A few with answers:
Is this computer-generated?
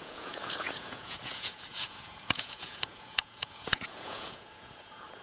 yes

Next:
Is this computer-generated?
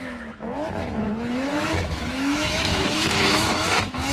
yes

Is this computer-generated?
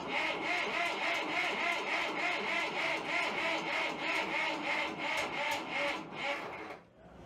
no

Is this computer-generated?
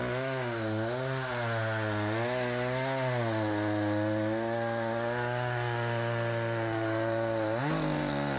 no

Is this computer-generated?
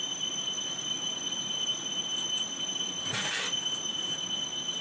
no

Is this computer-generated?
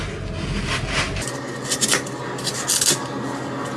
no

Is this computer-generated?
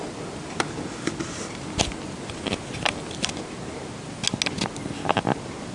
no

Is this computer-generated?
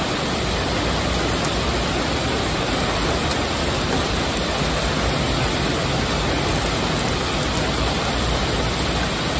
no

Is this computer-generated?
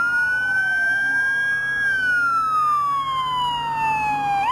no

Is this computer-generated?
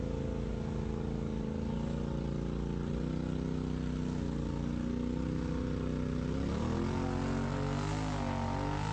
no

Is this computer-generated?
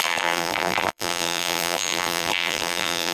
yes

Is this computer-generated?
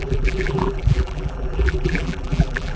yes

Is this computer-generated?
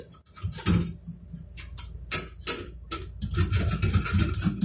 no